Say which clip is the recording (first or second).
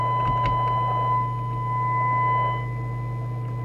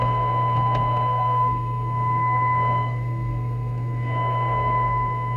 first